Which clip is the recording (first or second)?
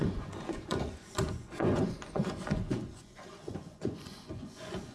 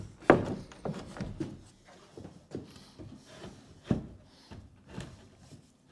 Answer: second